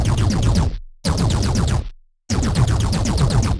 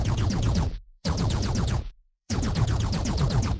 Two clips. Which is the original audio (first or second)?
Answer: first